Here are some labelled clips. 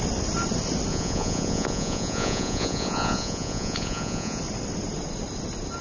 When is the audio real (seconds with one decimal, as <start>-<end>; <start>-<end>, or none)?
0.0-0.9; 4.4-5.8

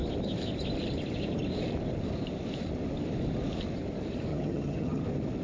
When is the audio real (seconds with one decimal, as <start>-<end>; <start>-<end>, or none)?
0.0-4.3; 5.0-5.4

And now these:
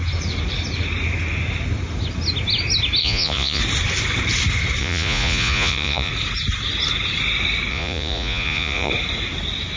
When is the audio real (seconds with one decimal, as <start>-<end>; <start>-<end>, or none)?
0.0-3.0; 3.6-4.8; 6.1-7.7; 8.9-9.8

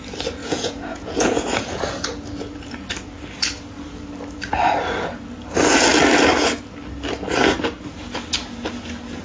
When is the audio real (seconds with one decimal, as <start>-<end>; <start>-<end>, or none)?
0.0-0.4; 1.8-9.2

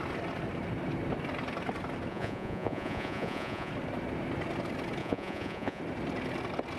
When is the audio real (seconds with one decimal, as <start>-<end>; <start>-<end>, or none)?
0.0-2.1; 3.7-5.0; 5.8-6.8